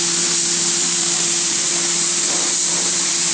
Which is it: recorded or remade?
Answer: remade